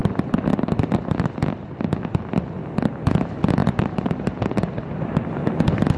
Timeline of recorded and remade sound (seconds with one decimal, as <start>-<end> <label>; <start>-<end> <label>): 0.0-3.6 recorded; 3.6-5.2 remade; 5.2-6.0 recorded